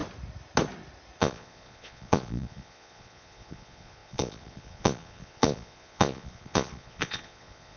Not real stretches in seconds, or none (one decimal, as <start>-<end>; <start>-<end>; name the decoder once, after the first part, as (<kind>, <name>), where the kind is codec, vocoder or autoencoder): 1.2-7.8 (vocoder, Vocos)